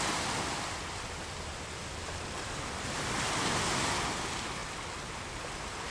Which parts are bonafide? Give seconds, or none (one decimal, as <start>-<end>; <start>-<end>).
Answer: 0.0-5.9